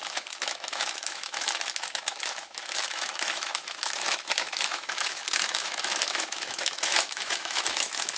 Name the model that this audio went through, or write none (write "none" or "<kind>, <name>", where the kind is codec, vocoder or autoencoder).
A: autoencoder, DAC-VAE